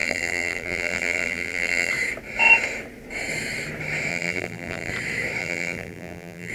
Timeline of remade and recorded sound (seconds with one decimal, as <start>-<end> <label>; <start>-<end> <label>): 0.0-1.9 remade; 1.9-4.1 recorded; 4.1-4.9 remade; 4.9-5.4 recorded; 5.4-6.5 remade